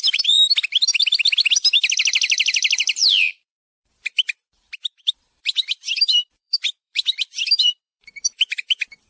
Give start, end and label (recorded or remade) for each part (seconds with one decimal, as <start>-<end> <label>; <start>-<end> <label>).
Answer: 0.0-1.2 remade; 1.2-1.8 recorded; 1.8-9.1 remade